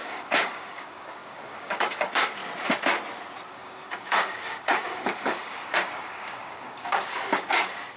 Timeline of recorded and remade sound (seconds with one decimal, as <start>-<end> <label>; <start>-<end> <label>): 0.0-2.4 remade; 2.4-3.5 recorded; 3.5-8.0 remade